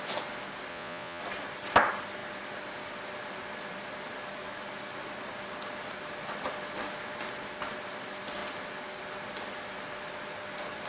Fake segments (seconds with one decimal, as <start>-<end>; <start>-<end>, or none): 0.7-1.2